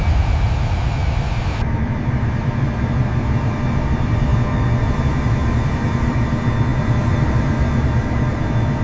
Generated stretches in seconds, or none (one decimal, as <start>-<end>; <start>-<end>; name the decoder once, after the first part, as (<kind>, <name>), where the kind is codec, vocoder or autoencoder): none

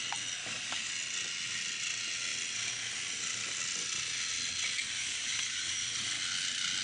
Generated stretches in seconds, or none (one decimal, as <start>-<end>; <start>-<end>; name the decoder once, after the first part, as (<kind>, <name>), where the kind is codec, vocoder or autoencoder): 0.4-0.9 (codec, DAC); 5.0-5.8

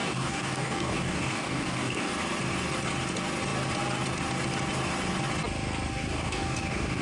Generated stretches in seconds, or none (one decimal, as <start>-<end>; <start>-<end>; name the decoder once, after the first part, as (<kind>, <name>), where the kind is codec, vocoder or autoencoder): 0.0-2.1 (codec, DAC); 5.9-7.0

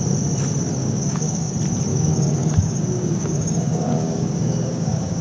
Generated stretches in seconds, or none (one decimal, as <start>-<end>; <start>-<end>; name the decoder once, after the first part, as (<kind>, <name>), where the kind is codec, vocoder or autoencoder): 0.8-1.5 (codec, DAC); 1.9-5.2

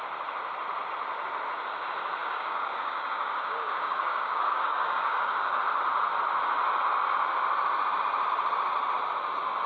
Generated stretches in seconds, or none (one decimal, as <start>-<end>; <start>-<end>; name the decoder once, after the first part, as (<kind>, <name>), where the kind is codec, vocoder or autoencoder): 2.2-5.6 (codec, DAC)

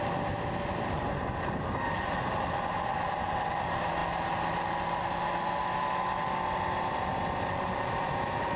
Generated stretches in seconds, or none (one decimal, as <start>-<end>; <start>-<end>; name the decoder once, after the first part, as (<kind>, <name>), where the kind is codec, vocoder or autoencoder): none